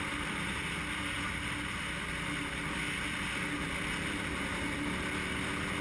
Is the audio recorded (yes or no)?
yes